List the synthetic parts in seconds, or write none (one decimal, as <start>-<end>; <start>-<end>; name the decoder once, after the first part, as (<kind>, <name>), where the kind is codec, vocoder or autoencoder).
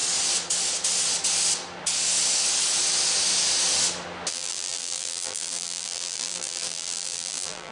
4.3-7.7 (vocoder, BigVGAN v2)